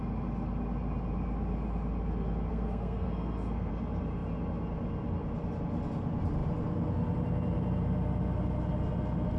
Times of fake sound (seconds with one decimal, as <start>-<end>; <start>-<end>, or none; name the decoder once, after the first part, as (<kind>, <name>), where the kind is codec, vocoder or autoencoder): 2.5-3.7 (codec, SNAC)